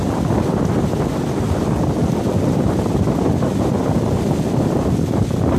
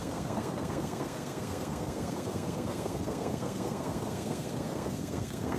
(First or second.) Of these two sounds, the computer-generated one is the second